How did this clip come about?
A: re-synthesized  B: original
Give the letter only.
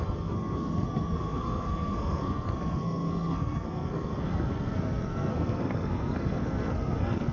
A